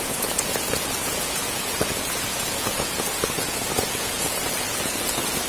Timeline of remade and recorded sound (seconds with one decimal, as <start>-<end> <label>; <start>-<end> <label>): 0.0-5.5 remade